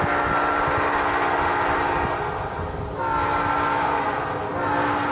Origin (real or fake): real